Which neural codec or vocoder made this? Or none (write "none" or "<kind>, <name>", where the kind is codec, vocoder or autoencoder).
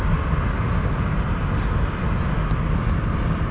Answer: none